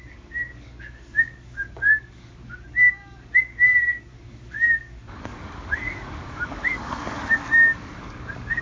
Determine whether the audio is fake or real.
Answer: fake